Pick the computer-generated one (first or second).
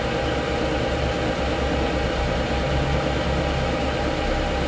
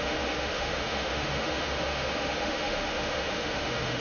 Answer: second